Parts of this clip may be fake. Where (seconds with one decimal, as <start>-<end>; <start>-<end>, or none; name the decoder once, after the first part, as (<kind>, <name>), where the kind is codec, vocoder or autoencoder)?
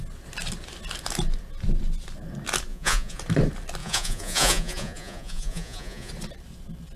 2.7-3.2 (vocoder, Vocos); 3.8-6.1